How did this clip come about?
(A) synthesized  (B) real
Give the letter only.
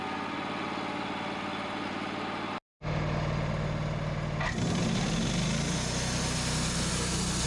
B